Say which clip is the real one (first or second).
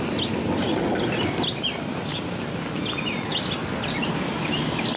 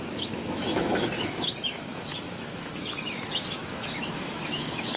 first